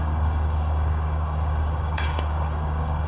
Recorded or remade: remade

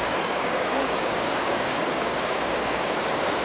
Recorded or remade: remade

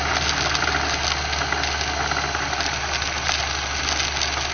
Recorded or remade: recorded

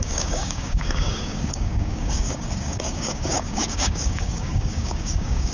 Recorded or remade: remade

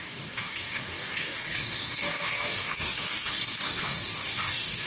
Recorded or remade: remade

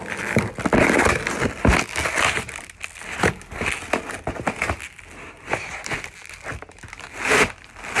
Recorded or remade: recorded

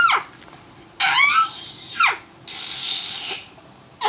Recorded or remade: recorded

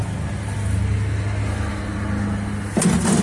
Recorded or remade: recorded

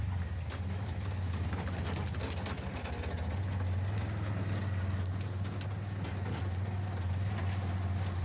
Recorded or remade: recorded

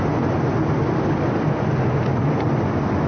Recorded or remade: recorded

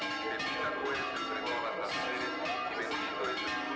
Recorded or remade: recorded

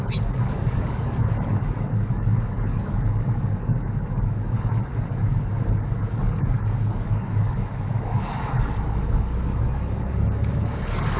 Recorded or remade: remade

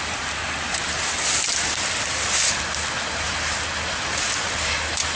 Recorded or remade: recorded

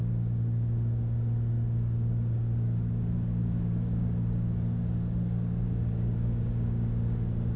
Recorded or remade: remade